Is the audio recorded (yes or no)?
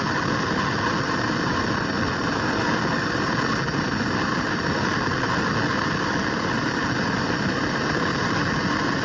yes